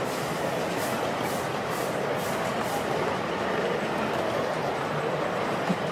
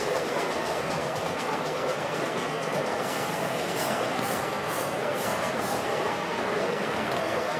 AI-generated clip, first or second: second